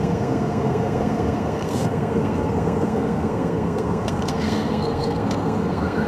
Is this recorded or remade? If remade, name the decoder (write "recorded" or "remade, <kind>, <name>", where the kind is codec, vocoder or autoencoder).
remade, codec, SNAC